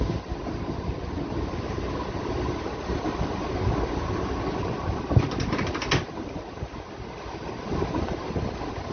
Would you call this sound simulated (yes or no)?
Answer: no